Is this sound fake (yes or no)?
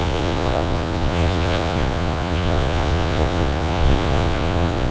yes